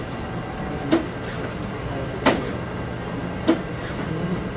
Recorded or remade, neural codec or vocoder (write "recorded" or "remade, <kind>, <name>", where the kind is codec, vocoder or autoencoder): recorded